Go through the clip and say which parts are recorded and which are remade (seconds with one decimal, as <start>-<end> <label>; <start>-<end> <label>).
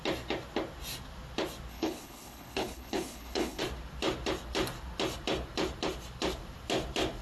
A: 0.0-1.7 recorded; 1.7-3.6 remade; 3.6-7.2 recorded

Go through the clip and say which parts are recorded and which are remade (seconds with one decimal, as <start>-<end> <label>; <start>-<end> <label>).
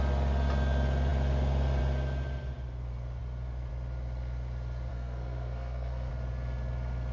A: 0.0-4.9 recorded; 4.9-6.1 remade; 6.1-7.1 recorded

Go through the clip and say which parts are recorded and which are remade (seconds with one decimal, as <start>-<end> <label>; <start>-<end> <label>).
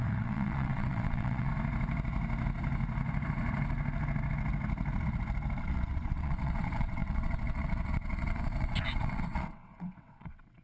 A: 0.0-1.5 remade; 1.5-5.6 recorded; 5.6-10.6 remade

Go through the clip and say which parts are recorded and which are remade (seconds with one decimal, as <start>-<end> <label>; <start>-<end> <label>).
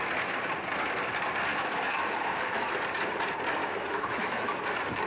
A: 0.0-1.5 recorded; 1.5-2.7 remade; 2.7-3.6 recorded; 3.6-4.6 remade; 4.6-5.1 recorded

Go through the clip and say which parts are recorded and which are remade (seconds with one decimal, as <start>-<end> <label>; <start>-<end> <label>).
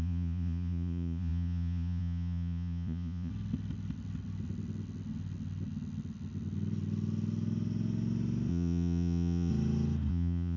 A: 0.0-3.3 remade; 3.3-8.5 recorded; 8.5-9.5 remade; 9.5-10.1 recorded; 10.1-10.6 remade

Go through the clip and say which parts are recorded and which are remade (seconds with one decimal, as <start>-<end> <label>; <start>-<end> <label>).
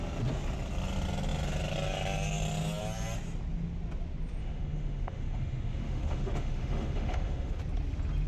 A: 0.0-4.4 recorded; 4.4-7.6 remade; 7.6-8.3 recorded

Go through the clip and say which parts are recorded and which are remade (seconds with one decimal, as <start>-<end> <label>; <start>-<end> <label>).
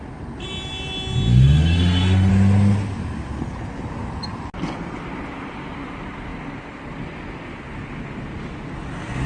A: 0.0-1.3 recorded; 1.3-2.3 remade; 2.3-9.3 recorded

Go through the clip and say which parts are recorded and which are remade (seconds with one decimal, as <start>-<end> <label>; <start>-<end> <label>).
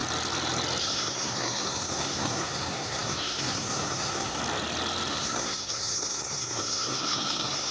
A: 0.0-0.8 recorded; 0.8-4.4 remade; 4.4-5.1 recorded; 5.1-7.7 remade